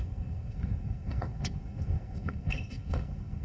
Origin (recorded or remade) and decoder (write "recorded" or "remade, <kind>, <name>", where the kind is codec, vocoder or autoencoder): remade, codec, SNAC